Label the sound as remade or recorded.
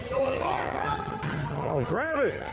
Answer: remade